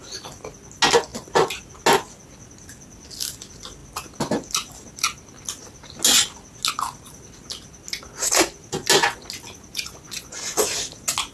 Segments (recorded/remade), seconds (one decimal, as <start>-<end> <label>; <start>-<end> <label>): 0.0-9.7 recorded; 9.7-10.7 remade; 10.7-11.3 recorded